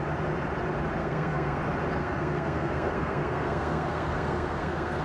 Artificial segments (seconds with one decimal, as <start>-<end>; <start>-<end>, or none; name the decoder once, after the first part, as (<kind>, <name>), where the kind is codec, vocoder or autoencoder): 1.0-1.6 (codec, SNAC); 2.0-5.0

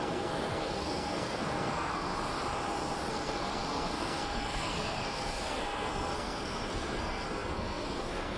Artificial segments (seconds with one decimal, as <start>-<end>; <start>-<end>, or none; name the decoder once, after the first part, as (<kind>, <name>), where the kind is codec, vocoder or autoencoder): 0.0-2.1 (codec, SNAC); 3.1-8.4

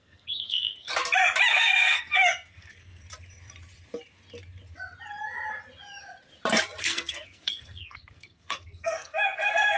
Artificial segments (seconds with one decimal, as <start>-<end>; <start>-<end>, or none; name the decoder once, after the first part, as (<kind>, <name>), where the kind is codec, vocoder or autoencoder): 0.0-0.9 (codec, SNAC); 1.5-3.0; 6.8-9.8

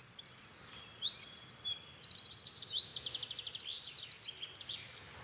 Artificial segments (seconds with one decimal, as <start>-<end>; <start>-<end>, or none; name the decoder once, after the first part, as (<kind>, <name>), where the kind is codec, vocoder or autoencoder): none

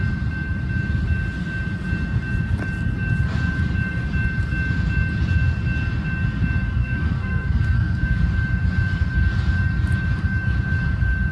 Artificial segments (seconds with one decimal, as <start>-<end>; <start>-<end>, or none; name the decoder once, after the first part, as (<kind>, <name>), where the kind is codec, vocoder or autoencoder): 6.8-8.2 (codec, SNAC)